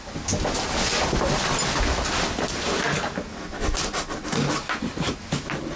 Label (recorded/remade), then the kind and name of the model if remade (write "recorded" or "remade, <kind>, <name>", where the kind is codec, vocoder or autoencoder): recorded